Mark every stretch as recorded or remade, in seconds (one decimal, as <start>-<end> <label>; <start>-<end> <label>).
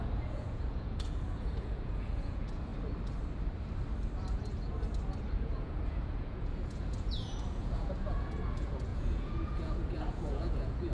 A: 0.0-2.7 remade; 2.7-4.3 recorded; 4.3-4.7 remade; 4.7-5.2 recorded; 5.2-10.9 remade